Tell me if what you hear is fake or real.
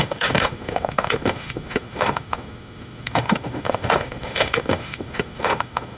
fake